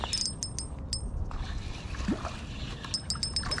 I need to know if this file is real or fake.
real